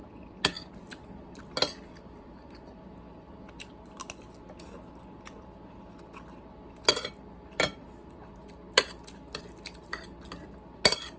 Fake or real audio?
real